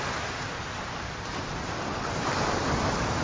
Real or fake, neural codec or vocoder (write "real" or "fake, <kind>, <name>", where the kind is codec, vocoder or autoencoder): real